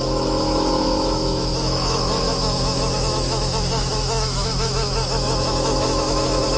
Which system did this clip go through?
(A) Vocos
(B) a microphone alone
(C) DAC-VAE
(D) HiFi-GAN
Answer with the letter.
C